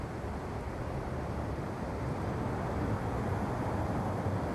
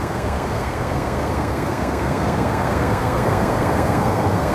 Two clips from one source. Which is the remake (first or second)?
second